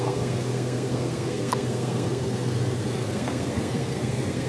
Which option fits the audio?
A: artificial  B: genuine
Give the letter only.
A